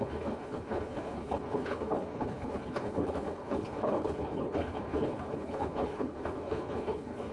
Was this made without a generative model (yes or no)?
no